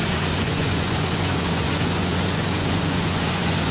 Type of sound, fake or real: fake